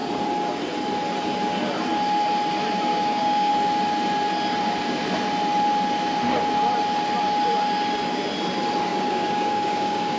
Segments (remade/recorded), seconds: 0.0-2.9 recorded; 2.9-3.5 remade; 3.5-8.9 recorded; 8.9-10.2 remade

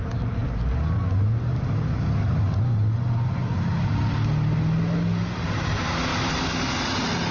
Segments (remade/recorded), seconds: 0.0-7.3 recorded

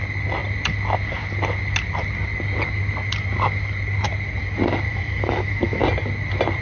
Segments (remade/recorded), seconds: 0.0-4.9 recorded; 4.9-5.8 remade; 5.8-6.6 recorded